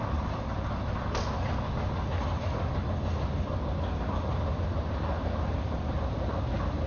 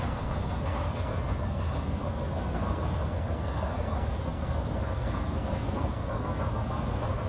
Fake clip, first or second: second